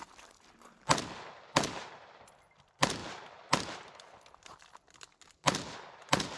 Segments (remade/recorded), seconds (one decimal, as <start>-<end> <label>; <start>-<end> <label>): 0.0-6.4 recorded